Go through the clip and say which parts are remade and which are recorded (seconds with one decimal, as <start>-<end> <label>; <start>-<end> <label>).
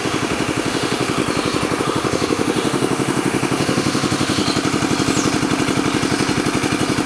0.0-1.2 remade; 1.2-1.8 recorded; 1.8-4.4 remade; 4.4-7.1 recorded